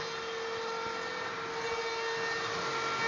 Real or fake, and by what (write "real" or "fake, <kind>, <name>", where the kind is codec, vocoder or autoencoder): real